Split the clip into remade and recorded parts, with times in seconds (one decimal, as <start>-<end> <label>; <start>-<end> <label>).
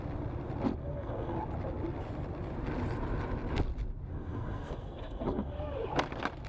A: 0.0-0.8 recorded; 0.8-1.4 remade; 1.4-4.1 recorded; 4.1-5.6 remade; 5.6-6.5 recorded